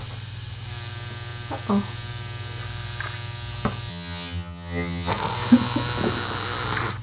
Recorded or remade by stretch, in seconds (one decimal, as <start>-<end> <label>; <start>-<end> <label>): 0.0-3.9 recorded; 3.9-5.1 remade; 5.1-7.0 recorded